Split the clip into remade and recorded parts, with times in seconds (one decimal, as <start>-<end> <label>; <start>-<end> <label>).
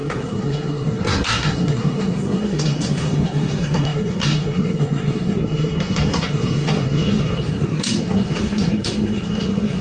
0.0-9.8 remade